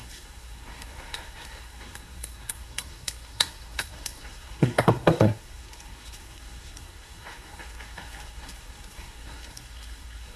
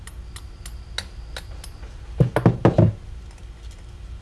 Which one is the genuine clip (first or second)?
second